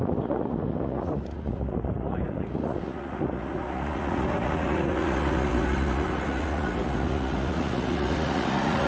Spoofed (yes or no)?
yes